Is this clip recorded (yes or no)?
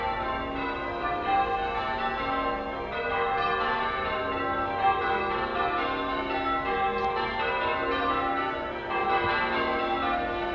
yes